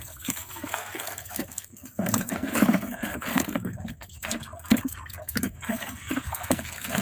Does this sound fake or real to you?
fake